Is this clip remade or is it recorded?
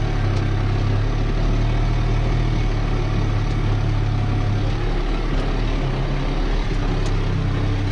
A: recorded